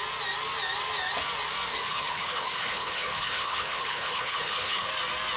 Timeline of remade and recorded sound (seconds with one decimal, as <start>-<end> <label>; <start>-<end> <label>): 0.0-1.7 recorded; 1.7-4.9 remade; 4.9-5.4 recorded